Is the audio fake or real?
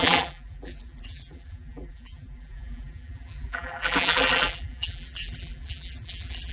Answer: fake